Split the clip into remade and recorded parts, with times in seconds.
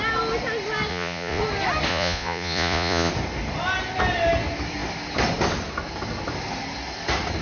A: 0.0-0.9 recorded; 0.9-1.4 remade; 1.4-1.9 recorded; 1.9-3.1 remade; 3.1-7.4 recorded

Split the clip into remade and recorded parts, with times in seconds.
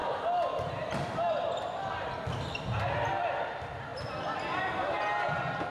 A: 0.0-1.9 remade; 1.9-3.9 recorded; 3.9-5.0 remade; 5.0-5.7 recorded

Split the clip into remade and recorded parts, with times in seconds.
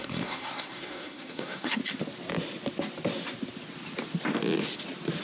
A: 0.0-1.8 remade; 1.8-5.2 recorded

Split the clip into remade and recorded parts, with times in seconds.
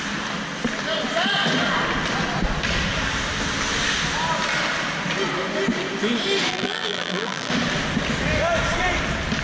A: 0.0-6.5 recorded; 6.5-7.5 remade; 7.5-9.4 recorded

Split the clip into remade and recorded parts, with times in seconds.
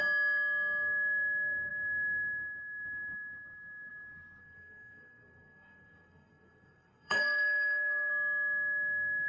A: 0.0-4.4 recorded; 4.4-8.1 remade; 8.1-9.3 recorded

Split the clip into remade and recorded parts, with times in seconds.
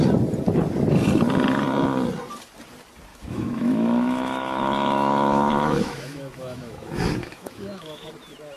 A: 0.0-3.1 recorded; 3.1-8.1 remade; 8.1-8.6 recorded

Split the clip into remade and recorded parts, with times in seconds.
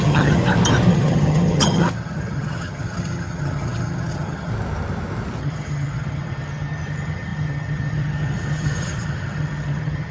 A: 0.0-0.4 remade; 0.4-0.9 recorded; 0.9-4.5 remade; 4.5-5.4 recorded; 5.4-10.1 remade